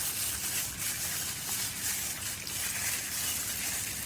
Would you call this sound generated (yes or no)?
no